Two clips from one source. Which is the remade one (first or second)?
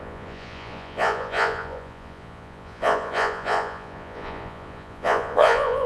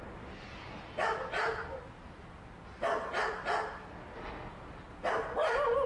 first